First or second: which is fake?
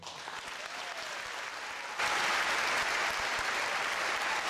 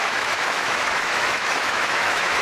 second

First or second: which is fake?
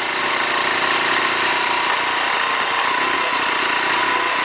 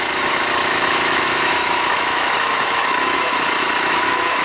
second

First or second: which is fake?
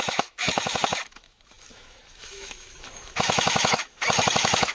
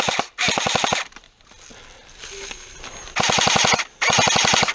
first